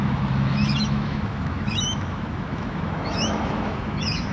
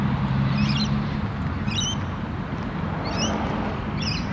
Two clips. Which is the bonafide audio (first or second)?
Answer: second